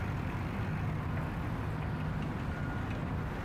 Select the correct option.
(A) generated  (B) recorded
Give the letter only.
B